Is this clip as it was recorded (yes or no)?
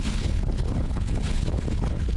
no